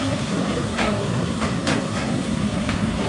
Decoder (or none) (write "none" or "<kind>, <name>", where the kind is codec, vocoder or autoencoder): codec, SNAC